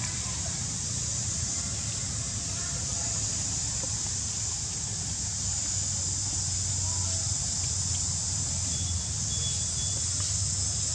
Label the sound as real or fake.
real